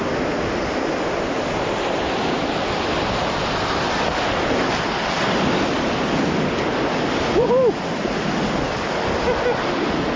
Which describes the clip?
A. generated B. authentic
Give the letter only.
B